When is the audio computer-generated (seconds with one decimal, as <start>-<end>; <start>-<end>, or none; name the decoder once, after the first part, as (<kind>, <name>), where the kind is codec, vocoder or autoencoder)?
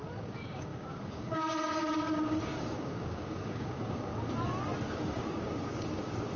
0.0-4.1 (codec, DAC); 4.9-6.4